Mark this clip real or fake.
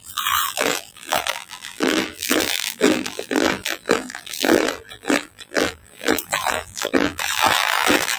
fake